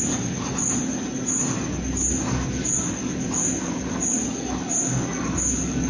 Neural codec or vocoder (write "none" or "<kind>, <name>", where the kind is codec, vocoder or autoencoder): none